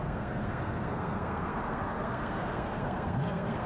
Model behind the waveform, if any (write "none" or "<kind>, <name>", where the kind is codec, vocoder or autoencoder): codec, SNAC